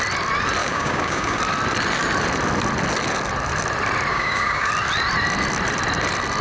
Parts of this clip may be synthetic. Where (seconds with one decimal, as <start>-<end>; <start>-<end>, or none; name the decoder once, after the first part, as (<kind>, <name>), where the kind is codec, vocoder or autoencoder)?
0.6-1.4 (codec, DAC); 4.1-4.7